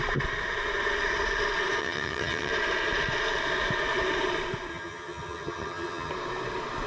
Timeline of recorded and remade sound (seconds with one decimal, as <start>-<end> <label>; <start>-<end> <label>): 0.0-1.8 recorded; 1.8-2.5 remade; 2.5-4.7 recorded; 4.7-6.1 remade; 6.1-6.9 recorded

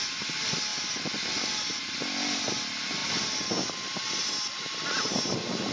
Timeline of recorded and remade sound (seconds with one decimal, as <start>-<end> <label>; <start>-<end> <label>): 0.0-5.7 recorded